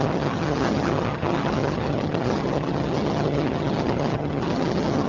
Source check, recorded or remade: remade